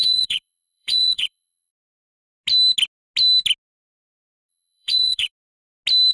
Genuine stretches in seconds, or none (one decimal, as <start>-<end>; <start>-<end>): 1.7-4.5; 5.3-6.1